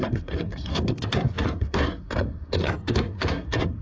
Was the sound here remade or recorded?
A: remade